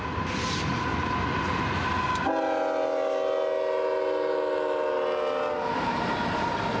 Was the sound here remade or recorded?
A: recorded